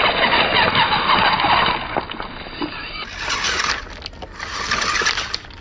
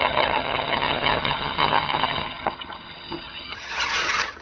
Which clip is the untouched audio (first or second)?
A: first